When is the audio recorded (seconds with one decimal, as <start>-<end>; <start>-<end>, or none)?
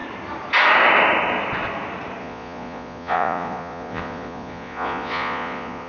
0.0-2.2